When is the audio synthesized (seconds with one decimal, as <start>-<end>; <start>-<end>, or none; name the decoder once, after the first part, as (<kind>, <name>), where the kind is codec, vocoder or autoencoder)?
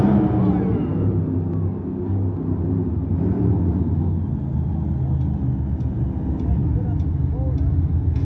none